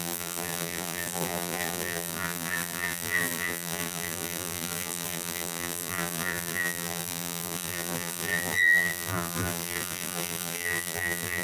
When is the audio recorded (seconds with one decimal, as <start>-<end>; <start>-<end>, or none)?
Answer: none